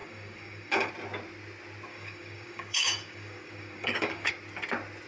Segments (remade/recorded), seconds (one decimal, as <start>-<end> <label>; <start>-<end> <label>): 0.0-0.9 remade; 0.9-1.9 recorded; 1.9-4.3 remade; 4.3-5.1 recorded